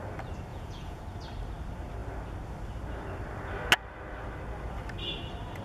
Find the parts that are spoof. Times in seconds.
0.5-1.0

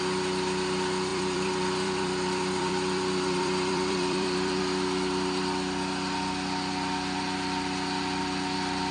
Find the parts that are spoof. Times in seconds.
1.1-4.6

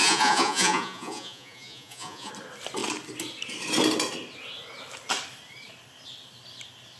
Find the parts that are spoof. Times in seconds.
0.0-2.3

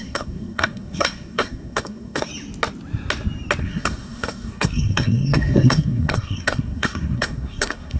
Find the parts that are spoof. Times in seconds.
0.0-2.3; 3.6-8.0